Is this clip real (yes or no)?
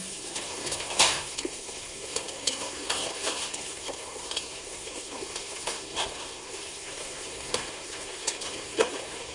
no